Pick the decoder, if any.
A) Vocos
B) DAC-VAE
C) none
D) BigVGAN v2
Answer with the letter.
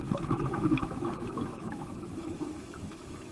B